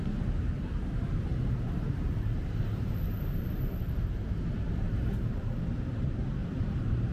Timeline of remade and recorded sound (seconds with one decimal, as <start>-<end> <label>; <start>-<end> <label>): 0.0-1.3 recorded; 1.3-5.6 remade; 5.6-6.4 recorded; 6.4-7.1 remade

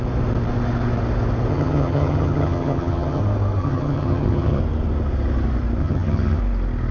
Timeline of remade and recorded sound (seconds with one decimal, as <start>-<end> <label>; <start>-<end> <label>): 0.0-1.5 recorded; 1.5-3.2 remade; 3.2-3.6 recorded; 3.6-4.6 remade; 4.6-5.8 recorded; 5.8-6.4 remade; 6.4-6.9 recorded

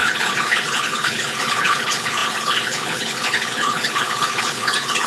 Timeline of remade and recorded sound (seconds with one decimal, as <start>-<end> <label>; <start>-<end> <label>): 0.0-5.1 remade

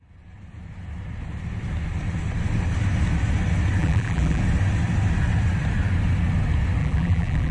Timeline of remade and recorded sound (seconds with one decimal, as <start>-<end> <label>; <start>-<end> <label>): 0.0-3.8 recorded; 3.8-4.4 remade; 4.4-6.8 recorded; 6.8-7.5 remade